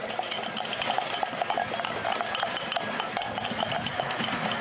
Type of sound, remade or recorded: recorded